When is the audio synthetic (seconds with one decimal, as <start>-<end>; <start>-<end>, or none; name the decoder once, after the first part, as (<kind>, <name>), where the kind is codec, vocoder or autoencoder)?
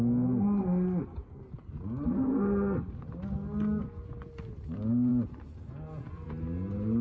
none